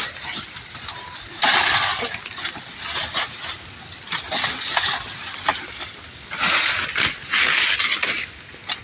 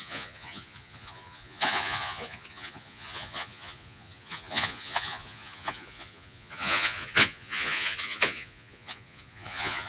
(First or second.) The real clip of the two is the first